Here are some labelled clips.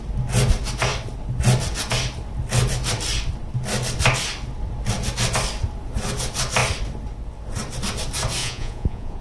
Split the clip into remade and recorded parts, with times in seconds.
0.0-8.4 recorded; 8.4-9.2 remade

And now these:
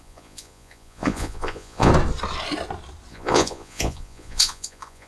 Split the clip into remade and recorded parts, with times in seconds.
0.0-1.9 remade; 1.9-3.1 recorded; 3.1-5.1 remade

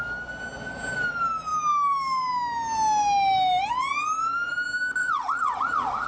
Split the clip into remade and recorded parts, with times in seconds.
0.0-5.0 recorded; 5.0-6.1 remade